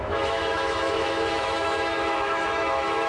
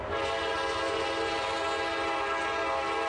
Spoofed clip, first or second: first